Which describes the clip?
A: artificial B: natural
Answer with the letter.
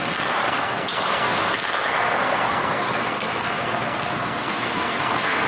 A